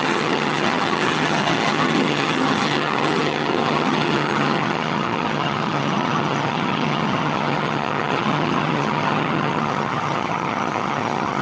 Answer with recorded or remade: remade